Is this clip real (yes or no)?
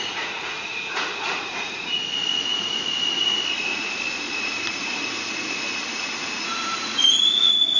no